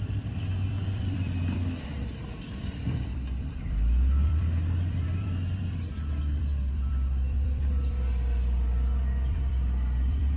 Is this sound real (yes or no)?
no